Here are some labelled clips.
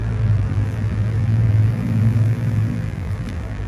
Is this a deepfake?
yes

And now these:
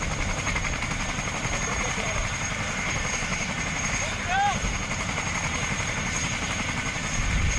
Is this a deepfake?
yes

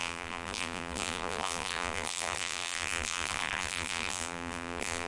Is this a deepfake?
yes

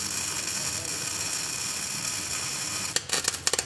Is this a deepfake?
no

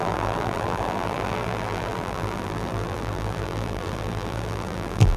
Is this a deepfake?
yes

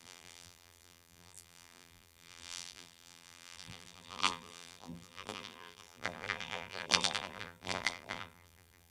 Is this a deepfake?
yes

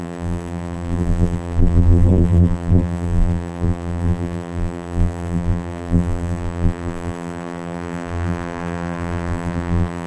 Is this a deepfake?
yes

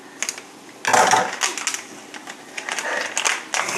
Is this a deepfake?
no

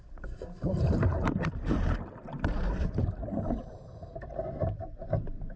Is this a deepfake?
yes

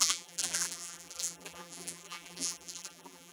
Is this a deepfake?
yes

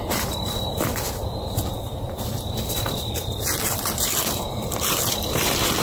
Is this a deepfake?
yes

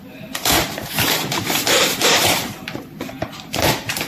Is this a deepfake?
yes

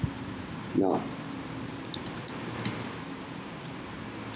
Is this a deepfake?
yes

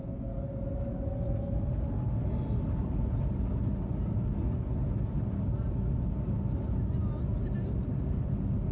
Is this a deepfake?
no